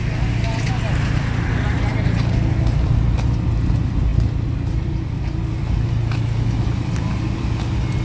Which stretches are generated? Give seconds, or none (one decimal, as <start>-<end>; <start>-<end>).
none